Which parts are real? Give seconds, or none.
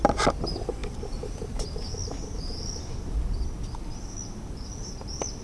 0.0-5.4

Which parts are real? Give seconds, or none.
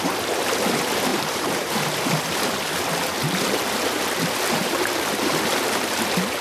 0.0-1.1; 1.9-4.6; 5.5-6.4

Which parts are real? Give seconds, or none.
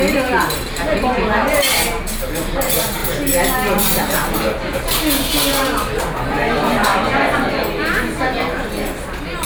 0.0-9.4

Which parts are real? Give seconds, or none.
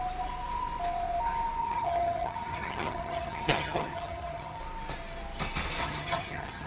0.0-1.6; 4.6-5.8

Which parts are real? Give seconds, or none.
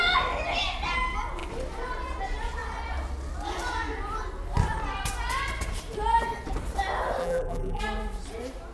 0.0-7.2; 7.8-8.7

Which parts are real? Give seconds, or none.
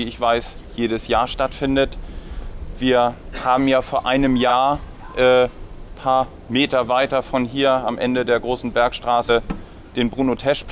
0.0-10.7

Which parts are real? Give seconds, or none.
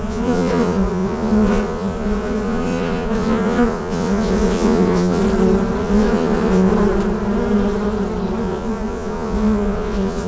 5.2-5.8; 6.7-8.4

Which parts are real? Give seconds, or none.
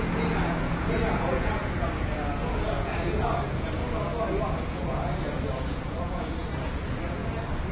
3.8-4.4; 7.2-7.7